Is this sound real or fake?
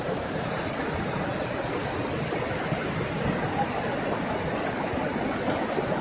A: real